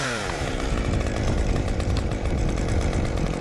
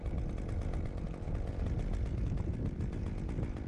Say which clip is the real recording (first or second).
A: second